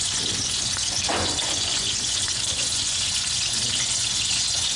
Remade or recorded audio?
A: remade